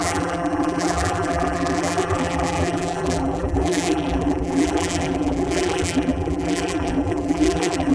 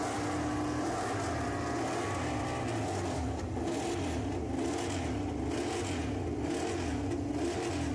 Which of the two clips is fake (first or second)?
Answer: first